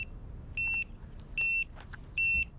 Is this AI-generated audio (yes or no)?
no